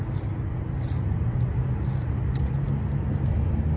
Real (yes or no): yes